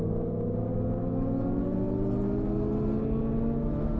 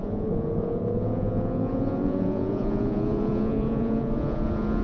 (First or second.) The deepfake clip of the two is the second